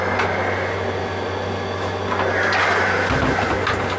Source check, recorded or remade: recorded